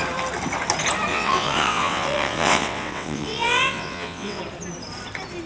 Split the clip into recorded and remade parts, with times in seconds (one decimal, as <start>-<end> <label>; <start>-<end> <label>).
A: 0.0-1.1 recorded; 1.1-4.4 remade; 4.4-5.5 recorded